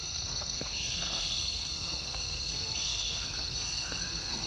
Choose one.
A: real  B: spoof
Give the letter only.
B